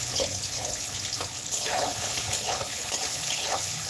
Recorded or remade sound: remade